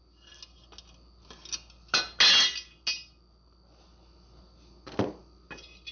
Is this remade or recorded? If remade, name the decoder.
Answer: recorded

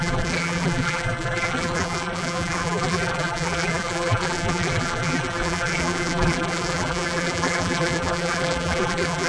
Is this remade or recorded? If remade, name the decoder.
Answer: remade, vocoder, BigVGAN v2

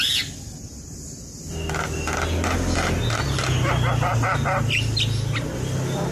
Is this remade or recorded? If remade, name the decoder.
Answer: recorded